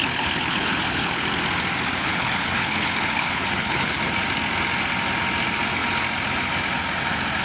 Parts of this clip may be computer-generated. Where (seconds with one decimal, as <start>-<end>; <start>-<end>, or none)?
0.0-1.3; 2.0-4.0